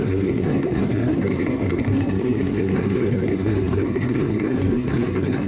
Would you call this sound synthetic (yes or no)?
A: yes